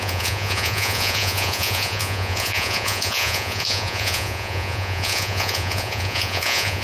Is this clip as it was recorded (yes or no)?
no